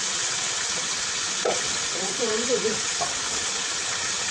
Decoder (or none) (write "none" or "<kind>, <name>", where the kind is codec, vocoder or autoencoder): vocoder, WaveNeXt